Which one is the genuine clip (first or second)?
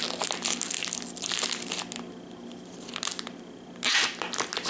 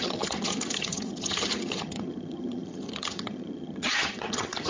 first